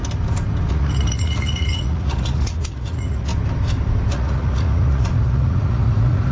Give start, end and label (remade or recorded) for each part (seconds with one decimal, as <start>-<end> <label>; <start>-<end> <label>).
0.0-0.7 recorded; 0.7-3.3 remade; 3.3-4.1 recorded; 4.1-6.3 remade